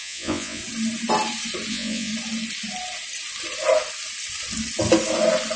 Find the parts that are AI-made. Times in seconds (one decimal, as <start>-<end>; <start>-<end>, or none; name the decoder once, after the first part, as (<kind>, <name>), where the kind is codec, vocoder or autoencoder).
0.0-0.6 (vocoder, Vocos); 1.7-2.1